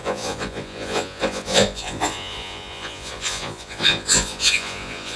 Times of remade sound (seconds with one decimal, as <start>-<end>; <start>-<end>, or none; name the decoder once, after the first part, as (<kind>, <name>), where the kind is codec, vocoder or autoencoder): 0.0-5.2 (vocoder, Vocos)